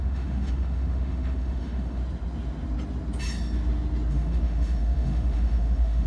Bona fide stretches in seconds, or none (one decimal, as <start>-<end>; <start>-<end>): 2.0-4.1

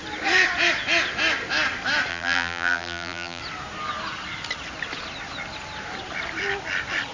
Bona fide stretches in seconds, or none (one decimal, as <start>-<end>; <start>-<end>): 0.0-2.1; 3.4-7.1

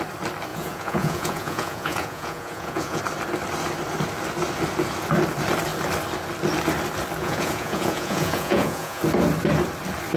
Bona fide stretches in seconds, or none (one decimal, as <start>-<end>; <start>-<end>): 0.0-0.5; 3.0-7.2; 9.0-10.2

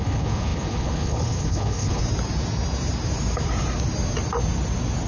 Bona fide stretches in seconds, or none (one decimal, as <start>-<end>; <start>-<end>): 2.0-5.1

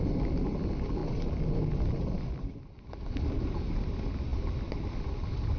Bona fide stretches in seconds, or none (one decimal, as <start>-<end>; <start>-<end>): 0.0-5.6

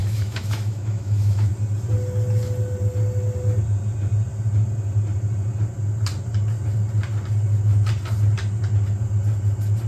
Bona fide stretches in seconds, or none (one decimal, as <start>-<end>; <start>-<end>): 1.5-9.9

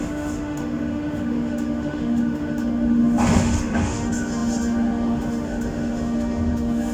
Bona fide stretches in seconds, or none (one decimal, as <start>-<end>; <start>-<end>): none